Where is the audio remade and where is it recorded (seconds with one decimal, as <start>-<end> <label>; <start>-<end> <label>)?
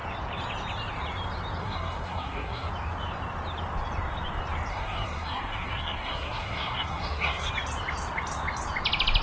0.0-1.6 recorded; 1.6-2.7 remade; 2.7-4.7 recorded; 4.7-7.5 remade; 7.5-9.2 recorded